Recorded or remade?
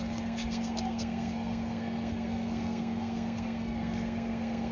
remade